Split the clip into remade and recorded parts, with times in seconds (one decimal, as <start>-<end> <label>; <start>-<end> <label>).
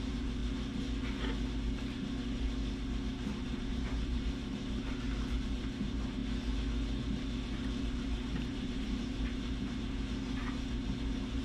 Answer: 0.0-0.4 remade; 0.4-3.1 recorded; 3.1-6.2 remade; 6.2-7.8 recorded; 7.8-11.4 remade